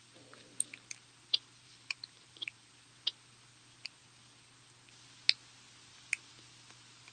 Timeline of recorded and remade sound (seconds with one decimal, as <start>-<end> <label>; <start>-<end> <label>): 0.0-1.6 recorded; 1.6-2.7 remade; 2.7-7.1 recorded